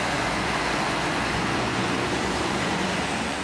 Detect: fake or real fake